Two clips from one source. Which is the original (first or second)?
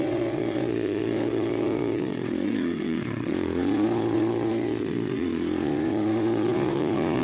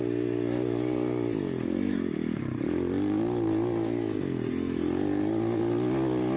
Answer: second